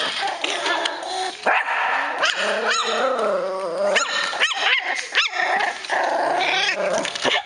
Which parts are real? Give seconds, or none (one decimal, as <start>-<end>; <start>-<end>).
0.0-0.6; 1.3-7.0